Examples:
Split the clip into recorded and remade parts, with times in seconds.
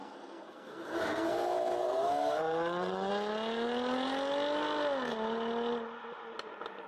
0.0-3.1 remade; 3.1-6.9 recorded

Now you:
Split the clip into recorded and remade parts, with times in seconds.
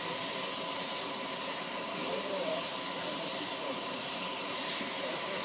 0.0-2.0 recorded; 2.0-2.5 remade; 2.5-3.6 recorded; 3.6-4.7 remade; 4.7-5.4 recorded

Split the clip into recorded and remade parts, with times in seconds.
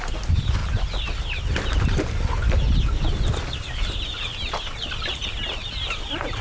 0.0-0.6 remade; 0.6-3.8 recorded; 3.8-4.3 remade; 4.3-5.1 recorded; 5.1-6.4 remade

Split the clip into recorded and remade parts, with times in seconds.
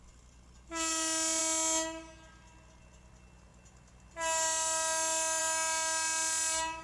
0.0-6.8 recorded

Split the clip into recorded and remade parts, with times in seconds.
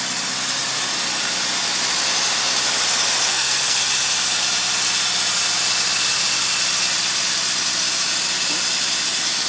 0.0-3.3 recorded; 3.3-3.8 remade; 3.8-9.5 recorded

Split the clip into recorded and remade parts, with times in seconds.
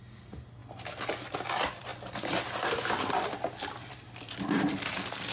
0.0-0.6 remade; 0.6-1.1 recorded; 1.1-5.3 remade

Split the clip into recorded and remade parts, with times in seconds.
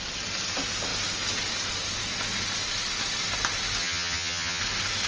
0.0-3.8 recorded; 3.8-4.6 remade; 4.6-5.1 recorded